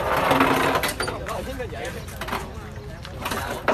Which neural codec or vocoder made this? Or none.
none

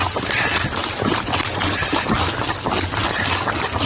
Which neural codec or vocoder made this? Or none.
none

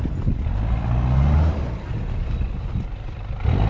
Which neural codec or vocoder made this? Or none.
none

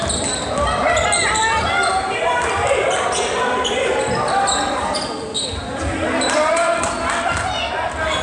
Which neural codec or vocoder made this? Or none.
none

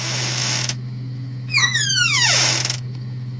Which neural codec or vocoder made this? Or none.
autoencoder, DAC-VAE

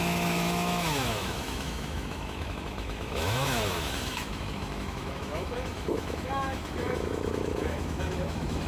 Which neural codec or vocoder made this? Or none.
autoencoder, DAC-VAE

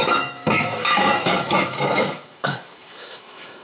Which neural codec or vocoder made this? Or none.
autoencoder, DAC-VAE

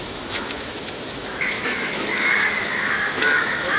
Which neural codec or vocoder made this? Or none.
autoencoder, DAC-VAE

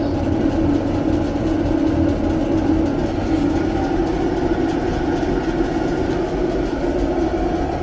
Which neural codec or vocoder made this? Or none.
none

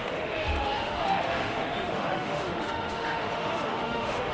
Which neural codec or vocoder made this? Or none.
autoencoder, DAC-VAE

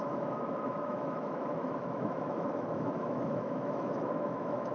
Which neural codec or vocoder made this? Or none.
autoencoder, DAC-VAE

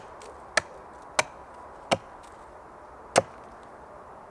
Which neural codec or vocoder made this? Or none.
none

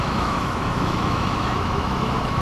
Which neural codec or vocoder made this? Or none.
autoencoder, DAC-VAE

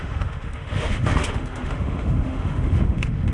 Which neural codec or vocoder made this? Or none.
autoencoder, DAC-VAE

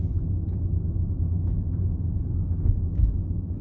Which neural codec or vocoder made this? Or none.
autoencoder, DAC-VAE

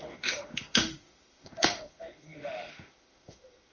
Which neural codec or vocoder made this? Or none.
autoencoder, DAC-VAE